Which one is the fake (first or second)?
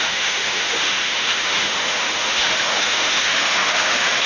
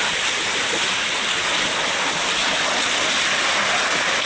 first